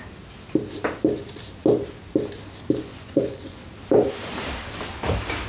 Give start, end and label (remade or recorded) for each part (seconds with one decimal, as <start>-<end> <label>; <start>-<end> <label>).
0.0-2.9 recorded; 2.9-3.6 remade; 3.6-5.5 recorded